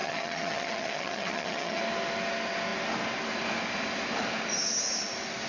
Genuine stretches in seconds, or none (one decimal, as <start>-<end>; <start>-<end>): 1.8-5.5